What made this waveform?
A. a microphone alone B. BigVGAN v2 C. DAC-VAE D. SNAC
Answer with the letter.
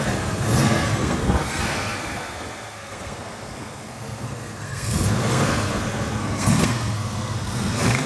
D